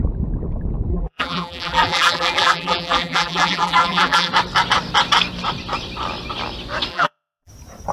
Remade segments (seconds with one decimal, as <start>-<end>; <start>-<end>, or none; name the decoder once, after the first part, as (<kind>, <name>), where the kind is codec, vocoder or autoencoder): 0.9-4.3 (vocoder, BigVGAN v2); 6.9-7.5